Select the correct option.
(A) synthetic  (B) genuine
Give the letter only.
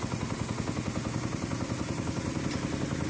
B